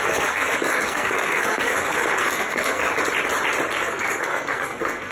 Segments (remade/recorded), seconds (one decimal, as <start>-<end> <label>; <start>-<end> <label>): 0.0-2.9 remade; 2.9-3.7 recorded; 3.7-5.1 remade